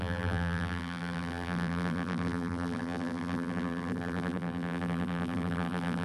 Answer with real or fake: fake